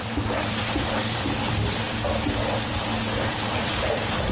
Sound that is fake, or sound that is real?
fake